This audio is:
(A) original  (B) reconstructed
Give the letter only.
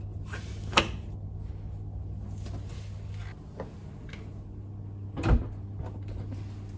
A